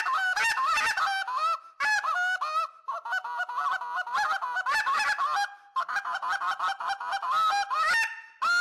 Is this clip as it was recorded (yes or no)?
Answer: yes